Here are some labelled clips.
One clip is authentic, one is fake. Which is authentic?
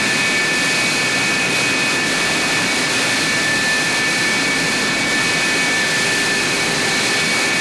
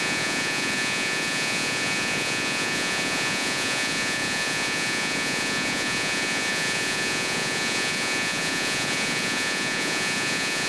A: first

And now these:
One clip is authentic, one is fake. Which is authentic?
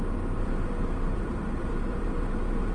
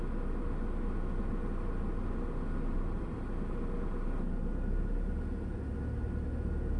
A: second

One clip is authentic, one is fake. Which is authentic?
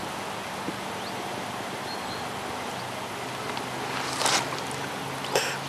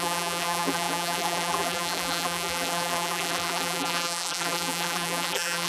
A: first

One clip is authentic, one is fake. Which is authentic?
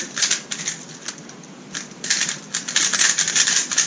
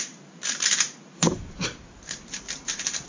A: first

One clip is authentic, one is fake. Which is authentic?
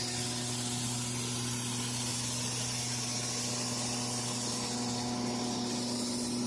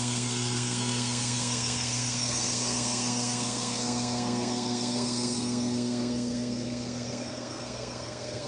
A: first